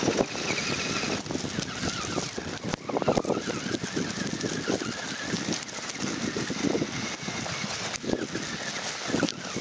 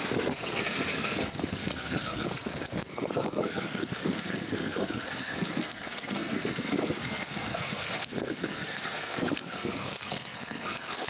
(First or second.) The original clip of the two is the first